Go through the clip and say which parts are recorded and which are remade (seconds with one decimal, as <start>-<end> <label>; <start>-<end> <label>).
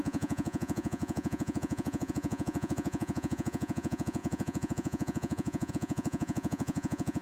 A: 0.0-7.2 remade